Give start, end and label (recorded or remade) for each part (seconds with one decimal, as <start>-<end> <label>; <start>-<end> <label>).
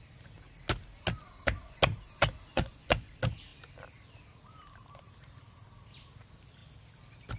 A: 0.0-2.5 recorded; 2.5-3.1 remade; 3.1-7.4 recorded